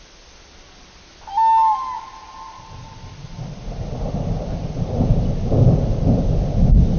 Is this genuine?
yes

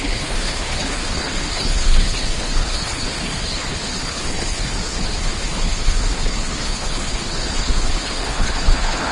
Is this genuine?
no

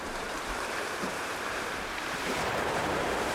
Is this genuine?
no